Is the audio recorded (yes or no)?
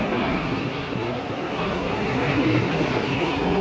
no